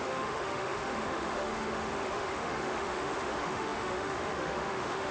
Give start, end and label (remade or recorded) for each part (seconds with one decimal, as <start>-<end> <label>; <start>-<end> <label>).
0.0-5.1 remade